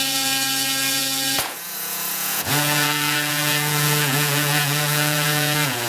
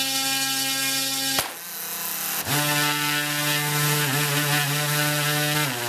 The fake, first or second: first